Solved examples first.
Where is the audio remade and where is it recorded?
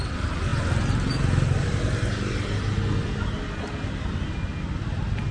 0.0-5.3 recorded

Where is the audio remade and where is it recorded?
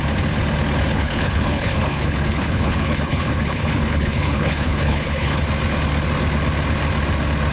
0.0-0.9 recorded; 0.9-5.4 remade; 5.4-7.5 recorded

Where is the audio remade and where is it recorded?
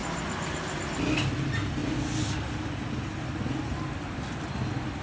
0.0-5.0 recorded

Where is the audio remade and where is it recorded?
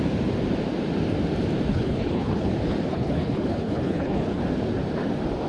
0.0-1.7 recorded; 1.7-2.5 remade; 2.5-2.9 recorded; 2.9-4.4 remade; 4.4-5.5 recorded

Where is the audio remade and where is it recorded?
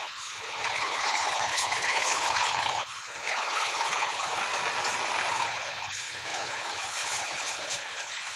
0.0-4.4 remade; 4.4-5.3 recorded; 5.3-8.4 remade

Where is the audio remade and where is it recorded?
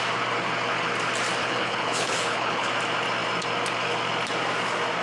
0.0-1.4 recorded; 1.4-2.7 remade; 2.7-5.0 recorded